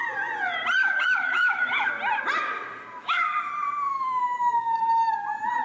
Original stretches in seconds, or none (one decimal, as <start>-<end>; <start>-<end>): 0.0-0.8; 1.9-3.0; 3.5-3.9; 4.8-5.6